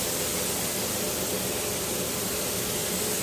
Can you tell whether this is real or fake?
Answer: real